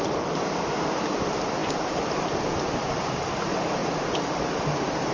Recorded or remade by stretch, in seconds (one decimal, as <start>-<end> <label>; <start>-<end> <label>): 0.0-5.1 recorded